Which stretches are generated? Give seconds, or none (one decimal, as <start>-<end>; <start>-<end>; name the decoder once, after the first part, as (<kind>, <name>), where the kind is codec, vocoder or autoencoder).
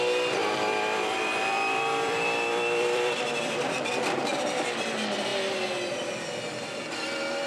0.4-4.3 (vocoder, BigVGAN v2)